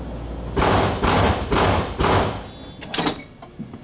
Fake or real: real